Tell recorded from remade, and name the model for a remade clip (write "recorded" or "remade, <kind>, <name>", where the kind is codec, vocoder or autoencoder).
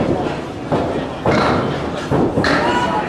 recorded